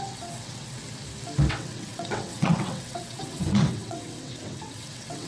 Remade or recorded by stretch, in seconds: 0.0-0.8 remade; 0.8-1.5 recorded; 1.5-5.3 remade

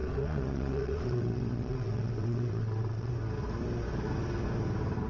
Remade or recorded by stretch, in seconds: 0.0-3.1 remade; 3.1-5.1 recorded

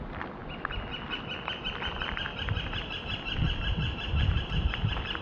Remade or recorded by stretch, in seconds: 0.0-5.2 recorded